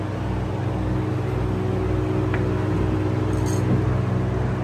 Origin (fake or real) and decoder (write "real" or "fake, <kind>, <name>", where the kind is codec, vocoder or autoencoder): real